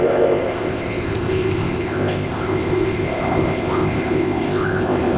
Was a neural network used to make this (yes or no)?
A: yes